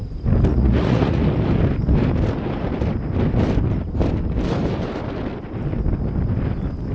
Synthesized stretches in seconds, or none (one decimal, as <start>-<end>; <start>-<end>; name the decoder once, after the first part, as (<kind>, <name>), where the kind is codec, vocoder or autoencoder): 0.5-1.2 (vocoder, Vocos)